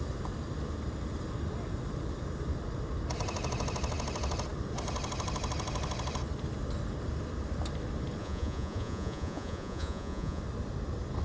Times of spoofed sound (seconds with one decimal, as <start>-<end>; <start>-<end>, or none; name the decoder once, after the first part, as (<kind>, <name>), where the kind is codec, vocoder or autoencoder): 8.2-10.4 (vocoder, Vocos)

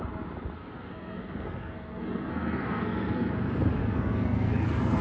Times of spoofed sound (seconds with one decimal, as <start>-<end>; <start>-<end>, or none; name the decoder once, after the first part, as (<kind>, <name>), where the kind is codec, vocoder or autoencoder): 0.6-3.3 (codec, SNAC); 3.8-5.0

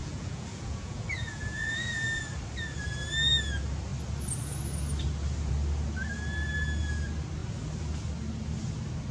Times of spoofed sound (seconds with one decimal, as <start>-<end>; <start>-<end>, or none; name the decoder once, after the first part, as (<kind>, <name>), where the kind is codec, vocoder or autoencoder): 0.0-2.2 (vocoder, Vocos)

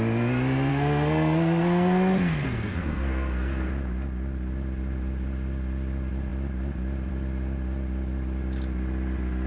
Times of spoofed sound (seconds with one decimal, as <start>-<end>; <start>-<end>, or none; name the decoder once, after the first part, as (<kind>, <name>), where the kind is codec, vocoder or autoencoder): 0.7-3.7 (codec, SNAC)

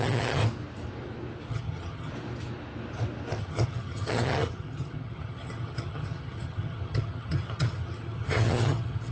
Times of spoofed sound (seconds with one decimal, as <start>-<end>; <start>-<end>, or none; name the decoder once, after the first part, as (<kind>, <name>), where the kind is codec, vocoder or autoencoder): 0.0-0.4 (vocoder, HiFi-GAN); 1.5-2.1; 3.4-9.1